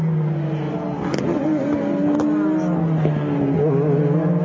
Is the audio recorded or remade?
recorded